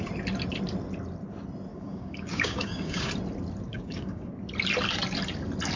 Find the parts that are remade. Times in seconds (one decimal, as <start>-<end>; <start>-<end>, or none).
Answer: 1.7-3.1; 3.7-4.3